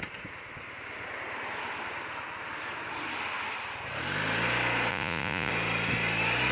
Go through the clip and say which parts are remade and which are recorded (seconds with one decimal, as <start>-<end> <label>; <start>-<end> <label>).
0.0-4.9 recorded; 4.9-5.5 remade; 5.5-6.5 recorded